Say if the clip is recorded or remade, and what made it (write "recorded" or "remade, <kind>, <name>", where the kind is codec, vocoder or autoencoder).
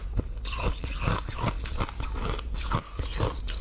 recorded